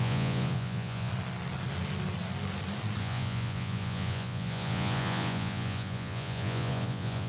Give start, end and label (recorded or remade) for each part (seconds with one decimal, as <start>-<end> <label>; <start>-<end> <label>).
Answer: 0.0-1.1 remade; 1.1-3.0 recorded; 3.0-7.3 remade

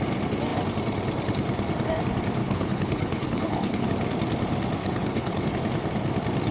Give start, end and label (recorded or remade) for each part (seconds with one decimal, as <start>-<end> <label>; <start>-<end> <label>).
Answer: 0.0-2.4 recorded; 2.4-3.9 remade; 3.9-4.8 recorded; 4.8-5.5 remade; 5.5-6.5 recorded

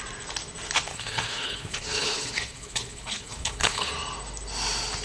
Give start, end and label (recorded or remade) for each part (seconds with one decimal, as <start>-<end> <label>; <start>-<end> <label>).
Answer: 0.0-0.9 recorded; 0.9-3.9 remade; 3.9-5.0 recorded

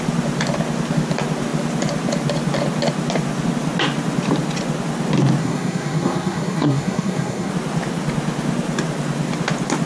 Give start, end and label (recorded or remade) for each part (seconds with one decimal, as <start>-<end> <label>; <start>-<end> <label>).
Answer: 0.0-5.4 recorded; 5.4-7.5 remade; 7.5-9.9 recorded

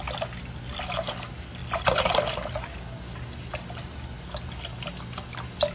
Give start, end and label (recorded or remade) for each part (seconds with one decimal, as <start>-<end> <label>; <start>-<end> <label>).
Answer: 0.0-5.7 recorded

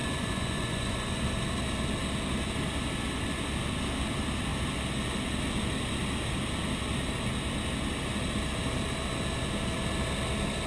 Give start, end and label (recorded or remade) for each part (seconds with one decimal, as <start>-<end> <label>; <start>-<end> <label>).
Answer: 0.0-1.2 remade; 1.2-10.7 recorded

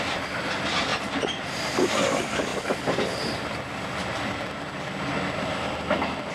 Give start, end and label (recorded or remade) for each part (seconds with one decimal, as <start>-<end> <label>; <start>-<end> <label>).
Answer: 0.0-0.9 remade; 0.9-1.4 recorded; 1.4-2.5 remade; 2.5-6.3 recorded

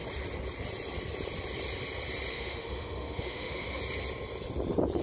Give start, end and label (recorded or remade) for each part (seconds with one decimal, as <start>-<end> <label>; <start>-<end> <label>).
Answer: 0.0-2.3 recorded; 2.3-3.8 remade; 3.8-5.0 recorded